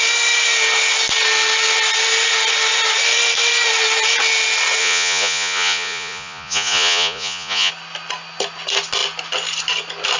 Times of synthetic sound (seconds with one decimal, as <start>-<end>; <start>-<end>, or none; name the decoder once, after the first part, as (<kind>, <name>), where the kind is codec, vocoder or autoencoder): 4.8-7.7 (vocoder, Vocos)